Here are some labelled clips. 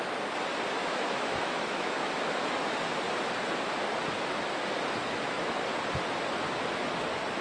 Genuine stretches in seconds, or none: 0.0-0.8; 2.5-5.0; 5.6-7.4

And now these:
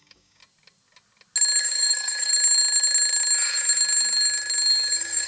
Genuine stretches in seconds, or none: 0.4-1.6; 2.3-4.7